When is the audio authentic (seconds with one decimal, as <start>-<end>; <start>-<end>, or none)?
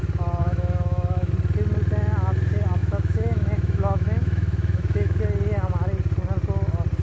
0.0-0.4; 1.3-2.8; 5.2-7.0